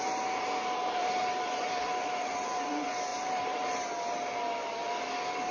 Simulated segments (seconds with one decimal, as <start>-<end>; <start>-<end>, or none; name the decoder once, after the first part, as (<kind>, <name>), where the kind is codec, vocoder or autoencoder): 0.8-2.7 (vocoder, BigVGAN v2); 3.1-3.9